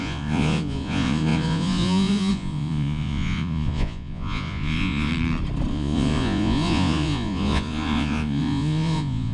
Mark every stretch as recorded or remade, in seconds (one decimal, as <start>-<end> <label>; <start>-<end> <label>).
0.0-5.1 remade; 5.1-5.7 recorded; 5.7-9.3 remade

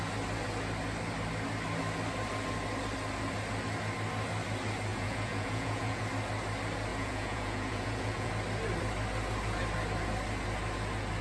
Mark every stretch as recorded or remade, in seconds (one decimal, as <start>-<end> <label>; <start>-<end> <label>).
0.0-4.9 recorded; 4.9-6.0 remade; 6.0-6.9 recorded; 6.9-8.3 remade; 8.3-11.2 recorded

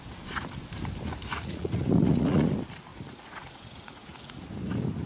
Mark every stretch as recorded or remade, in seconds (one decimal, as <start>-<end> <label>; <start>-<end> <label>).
0.0-1.3 recorded; 1.3-2.5 remade; 2.5-2.9 recorded; 2.9-4.4 remade; 4.4-5.1 recorded

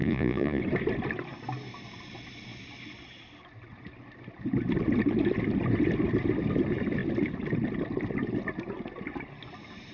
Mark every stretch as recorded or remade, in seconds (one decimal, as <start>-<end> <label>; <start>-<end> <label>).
0.0-0.6 remade; 0.6-9.9 recorded